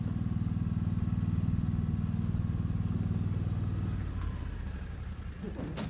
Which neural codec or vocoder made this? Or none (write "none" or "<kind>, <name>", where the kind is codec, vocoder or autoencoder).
none